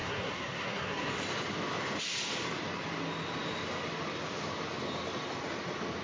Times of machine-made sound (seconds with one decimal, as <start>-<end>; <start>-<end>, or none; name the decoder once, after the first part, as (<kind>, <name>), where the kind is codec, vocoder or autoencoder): 0.0-1.1 (codec, SNAC)